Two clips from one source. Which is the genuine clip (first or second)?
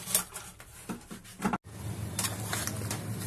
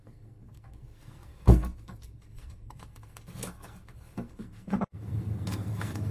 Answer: first